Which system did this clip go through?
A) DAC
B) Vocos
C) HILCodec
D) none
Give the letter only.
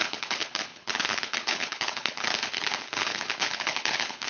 C